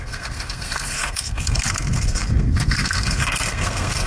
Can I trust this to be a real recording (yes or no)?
no